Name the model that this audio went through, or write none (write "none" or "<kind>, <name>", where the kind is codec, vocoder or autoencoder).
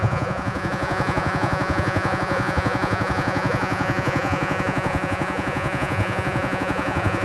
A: vocoder, Vocos